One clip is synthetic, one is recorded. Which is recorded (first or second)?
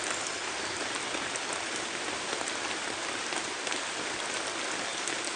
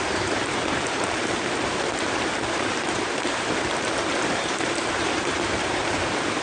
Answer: first